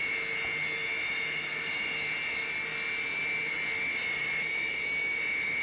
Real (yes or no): yes